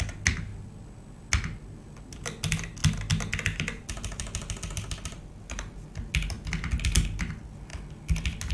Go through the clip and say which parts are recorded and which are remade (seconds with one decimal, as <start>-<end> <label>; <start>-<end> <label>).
0.0-8.5 recorded